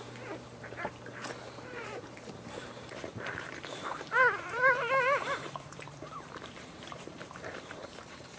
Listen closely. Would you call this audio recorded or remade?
remade